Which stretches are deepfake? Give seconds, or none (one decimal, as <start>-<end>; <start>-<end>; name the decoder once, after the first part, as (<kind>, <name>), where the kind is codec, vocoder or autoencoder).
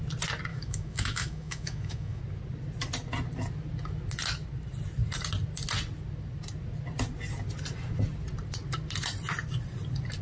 0.5-2.2 (autoencoder, DAC-VAE)